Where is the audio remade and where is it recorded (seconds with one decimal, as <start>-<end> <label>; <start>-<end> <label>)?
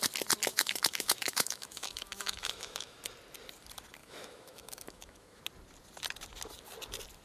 0.0-0.5 recorded; 0.5-3.0 remade; 3.0-4.0 recorded; 4.0-5.4 remade; 5.4-7.2 recorded